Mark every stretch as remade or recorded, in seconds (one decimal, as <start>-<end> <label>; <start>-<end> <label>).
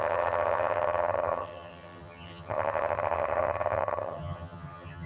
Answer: 0.0-5.1 remade